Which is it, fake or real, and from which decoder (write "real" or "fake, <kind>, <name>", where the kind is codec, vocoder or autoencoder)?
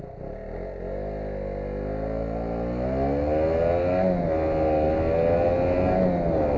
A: real